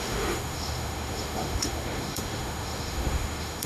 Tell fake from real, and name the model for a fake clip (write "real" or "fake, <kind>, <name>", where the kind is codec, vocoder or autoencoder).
fake, autoencoder, DAC-VAE